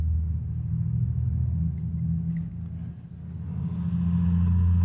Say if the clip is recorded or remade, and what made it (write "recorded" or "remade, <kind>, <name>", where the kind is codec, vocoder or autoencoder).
recorded